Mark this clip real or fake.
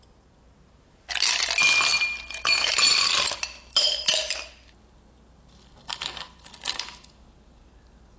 real